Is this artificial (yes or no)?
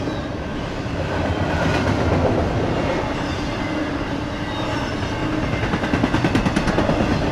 no